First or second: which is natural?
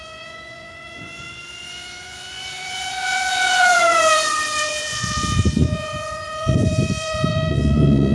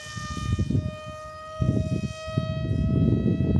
second